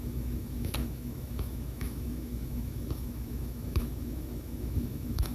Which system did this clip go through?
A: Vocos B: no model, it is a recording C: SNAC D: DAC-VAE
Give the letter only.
D